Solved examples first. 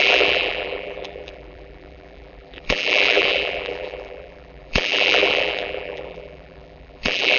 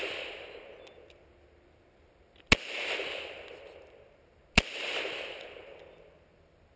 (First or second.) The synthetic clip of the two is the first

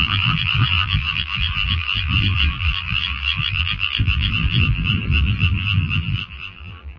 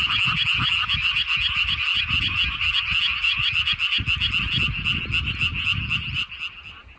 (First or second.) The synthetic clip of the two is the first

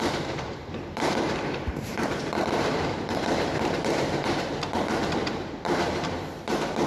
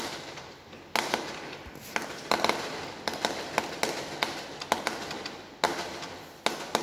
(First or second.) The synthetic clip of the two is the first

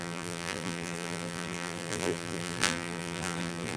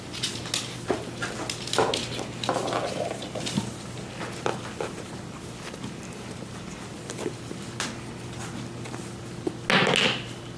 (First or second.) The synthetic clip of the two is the first